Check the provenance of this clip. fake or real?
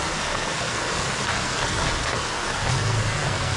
fake